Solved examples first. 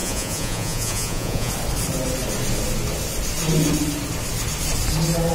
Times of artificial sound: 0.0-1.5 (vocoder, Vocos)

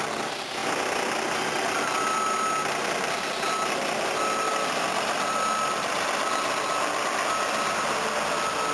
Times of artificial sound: none

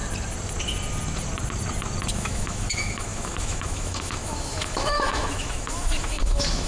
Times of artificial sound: 2.1-6.7 (autoencoder, DAC-VAE)

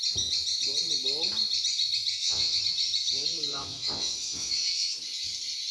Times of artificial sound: 2.1-2.6 (vocoder, WaveNeXt); 3.5-4.9

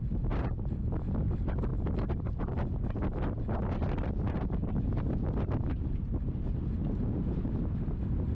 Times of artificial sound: none

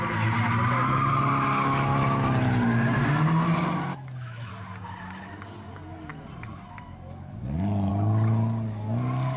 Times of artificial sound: 3.9-4.5 (autoencoder, DAC-VAE)

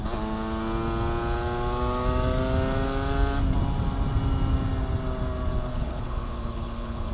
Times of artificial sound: 5.7-7.1 (codec, HILCodec)